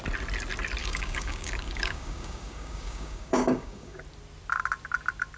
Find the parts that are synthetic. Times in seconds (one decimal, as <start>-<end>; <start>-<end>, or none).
0.8-4.0